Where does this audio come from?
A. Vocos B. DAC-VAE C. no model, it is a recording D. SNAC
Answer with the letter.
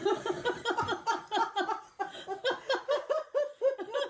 C